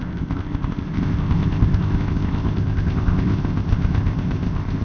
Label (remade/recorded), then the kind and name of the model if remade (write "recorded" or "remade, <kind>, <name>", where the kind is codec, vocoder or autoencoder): remade, codec, ZipCodec